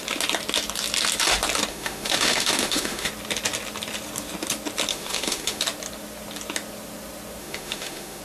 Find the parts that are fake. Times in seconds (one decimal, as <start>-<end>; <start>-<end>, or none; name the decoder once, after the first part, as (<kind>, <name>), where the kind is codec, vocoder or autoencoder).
1.7-3.1 (autoencoder, DAC-VAE); 4.9-5.6; 7.4-8.2